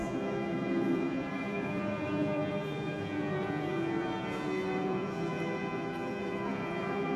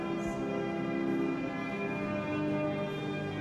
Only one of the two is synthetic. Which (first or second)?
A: first